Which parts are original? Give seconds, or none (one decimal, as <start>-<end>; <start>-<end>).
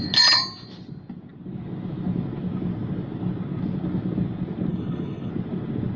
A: 0.0-4.7; 5.3-6.0